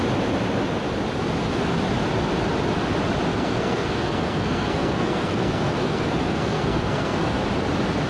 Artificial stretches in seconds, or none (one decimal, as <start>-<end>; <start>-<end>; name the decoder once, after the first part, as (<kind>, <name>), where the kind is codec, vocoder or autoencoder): 3.3-7.4 (codec, SNAC)